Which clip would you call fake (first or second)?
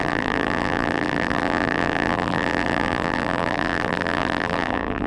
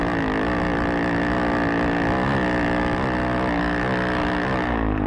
first